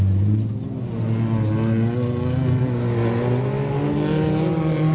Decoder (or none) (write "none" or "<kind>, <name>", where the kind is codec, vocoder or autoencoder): none